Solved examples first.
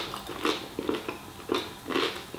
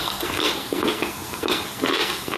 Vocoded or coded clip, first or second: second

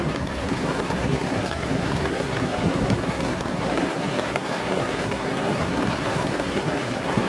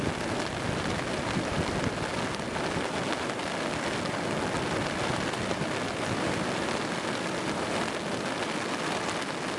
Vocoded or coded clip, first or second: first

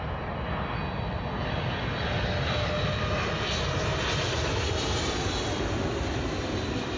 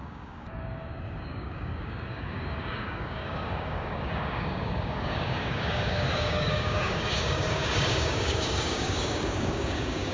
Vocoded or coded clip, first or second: second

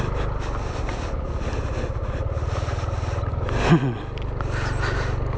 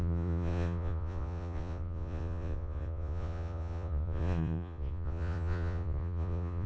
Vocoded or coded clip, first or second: second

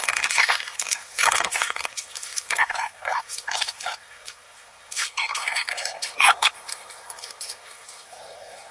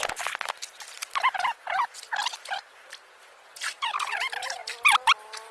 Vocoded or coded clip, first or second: first